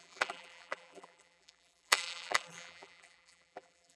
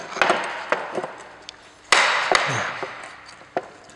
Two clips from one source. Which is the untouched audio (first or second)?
second